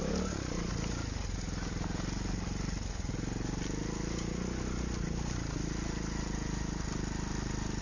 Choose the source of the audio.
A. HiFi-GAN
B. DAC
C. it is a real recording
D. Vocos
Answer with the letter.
C